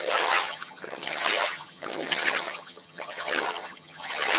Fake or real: fake